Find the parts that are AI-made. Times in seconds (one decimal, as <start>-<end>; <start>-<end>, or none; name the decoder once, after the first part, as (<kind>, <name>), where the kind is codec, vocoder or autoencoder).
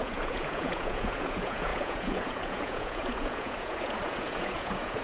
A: 0.0-5.0 (vocoder, Vocos)